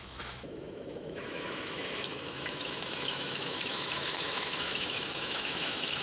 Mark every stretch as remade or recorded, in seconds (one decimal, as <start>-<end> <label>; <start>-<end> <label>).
0.0-6.0 remade

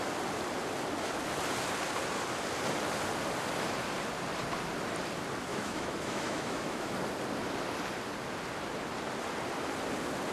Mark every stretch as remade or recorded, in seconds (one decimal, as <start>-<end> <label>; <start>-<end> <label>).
0.0-5.5 recorded; 5.5-6.9 remade; 6.9-10.3 recorded

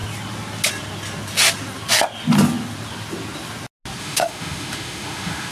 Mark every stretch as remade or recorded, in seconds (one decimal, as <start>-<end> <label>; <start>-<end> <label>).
0.0-4.0 recorded; 4.0-5.5 remade

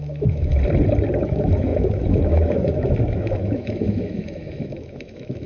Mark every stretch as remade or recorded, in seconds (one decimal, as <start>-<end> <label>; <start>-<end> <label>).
0.0-0.5 remade; 0.5-1.2 recorded; 1.2-5.5 remade

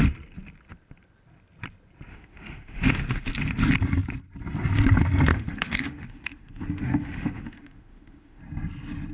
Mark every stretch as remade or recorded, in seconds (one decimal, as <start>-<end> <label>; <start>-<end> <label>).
0.0-2.1 recorded; 2.1-3.3 remade; 3.3-5.3 recorded; 5.3-8.4 remade; 8.4-9.1 recorded

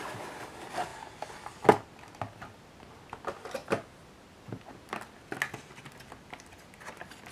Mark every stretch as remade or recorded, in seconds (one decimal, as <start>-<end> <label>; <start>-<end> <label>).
0.0-7.3 recorded